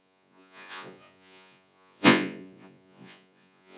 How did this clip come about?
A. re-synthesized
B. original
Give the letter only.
A